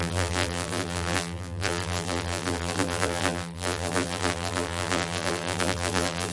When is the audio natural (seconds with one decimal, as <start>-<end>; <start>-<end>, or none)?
none